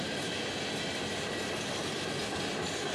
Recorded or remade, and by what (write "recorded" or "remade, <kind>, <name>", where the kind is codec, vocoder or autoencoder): recorded